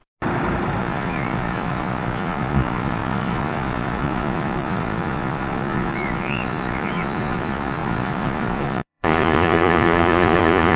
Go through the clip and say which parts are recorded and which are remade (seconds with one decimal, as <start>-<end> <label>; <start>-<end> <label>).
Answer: 0.0-0.8 recorded; 0.8-10.8 remade